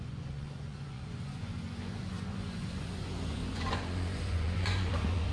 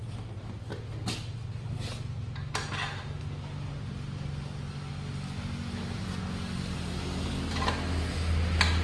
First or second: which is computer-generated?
first